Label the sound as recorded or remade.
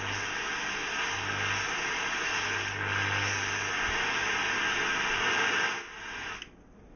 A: recorded